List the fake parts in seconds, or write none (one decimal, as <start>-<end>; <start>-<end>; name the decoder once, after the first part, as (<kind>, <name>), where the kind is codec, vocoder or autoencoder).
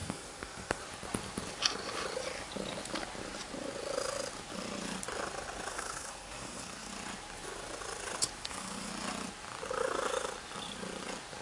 0.0-0.8 (codec, SNAC); 5.7-6.9; 8.4-8.9